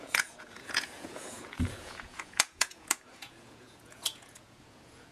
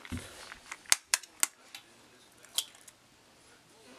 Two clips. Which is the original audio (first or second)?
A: second